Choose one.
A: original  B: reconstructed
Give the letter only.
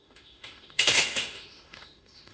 B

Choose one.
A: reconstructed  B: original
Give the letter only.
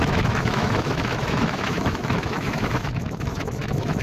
A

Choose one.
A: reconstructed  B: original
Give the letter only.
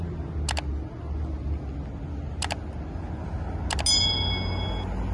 B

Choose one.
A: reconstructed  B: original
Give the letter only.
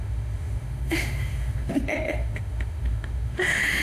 A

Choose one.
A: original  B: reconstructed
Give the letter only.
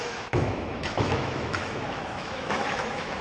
B